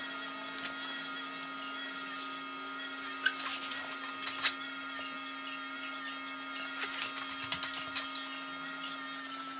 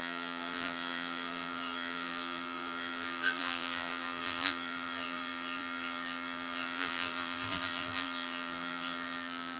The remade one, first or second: second